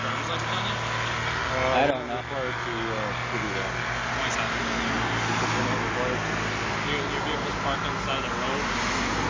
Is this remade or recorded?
recorded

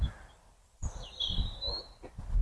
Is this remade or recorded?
recorded